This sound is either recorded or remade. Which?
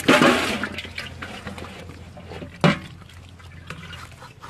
recorded